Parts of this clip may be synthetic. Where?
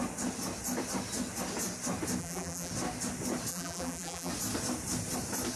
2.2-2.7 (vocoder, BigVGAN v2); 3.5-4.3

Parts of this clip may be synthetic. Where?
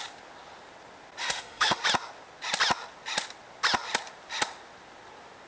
1.2-1.8 (autoencoder, DAC-VAE)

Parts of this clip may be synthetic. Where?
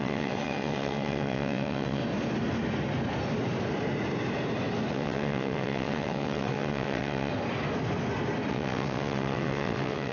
0.0-2.0 (vocoder, WaveNeXt); 4.9-7.3; 8.5-10.1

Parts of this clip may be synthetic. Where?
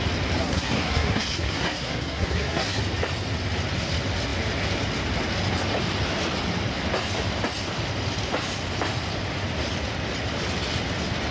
0.4-2.8 (codec, SNAC)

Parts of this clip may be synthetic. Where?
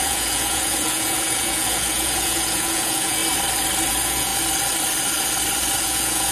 0.0-3.2 (vocoder, Vocos); 3.9-4.3; 5.8-6.3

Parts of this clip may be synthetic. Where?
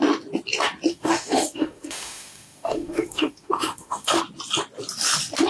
0.9-4.2 (autoencoder, DAC-VAE)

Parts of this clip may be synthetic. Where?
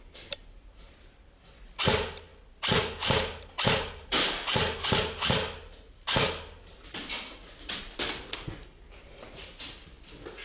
none